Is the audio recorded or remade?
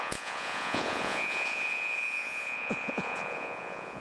remade